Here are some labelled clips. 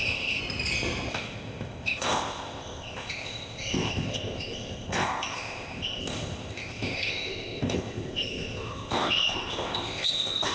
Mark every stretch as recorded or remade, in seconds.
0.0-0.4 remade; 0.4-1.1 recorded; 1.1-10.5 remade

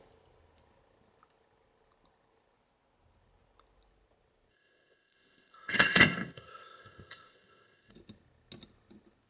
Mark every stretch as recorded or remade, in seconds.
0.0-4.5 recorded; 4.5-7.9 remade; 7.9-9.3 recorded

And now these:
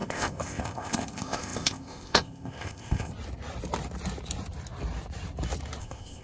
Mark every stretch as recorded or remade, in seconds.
0.0-3.1 remade; 3.1-5.8 recorded; 5.8-6.2 remade

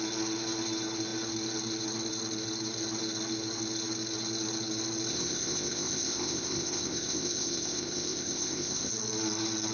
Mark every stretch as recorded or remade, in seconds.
0.0-5.1 recorded; 5.1-8.9 remade; 8.9-9.7 recorded

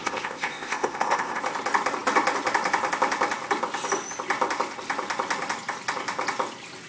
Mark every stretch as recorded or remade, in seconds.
0.0-1.4 remade; 1.4-6.9 recorded

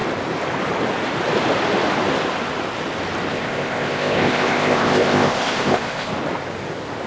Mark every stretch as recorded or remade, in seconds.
0.0-3.3 recorded; 3.3-6.1 remade; 6.1-7.1 recorded

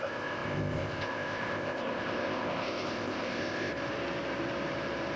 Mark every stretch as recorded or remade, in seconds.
0.0-3.7 remade; 3.7-5.2 recorded

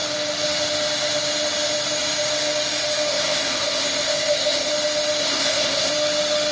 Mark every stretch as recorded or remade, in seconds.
0.0-3.1 recorded; 3.1-4.7 remade; 4.7-5.2 recorded; 5.2-5.9 remade; 5.9-6.5 recorded